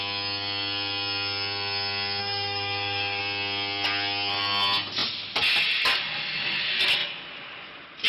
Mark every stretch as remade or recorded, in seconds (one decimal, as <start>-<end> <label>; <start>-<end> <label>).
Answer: 0.0-2.2 recorded; 2.2-3.2 remade; 3.2-8.1 recorded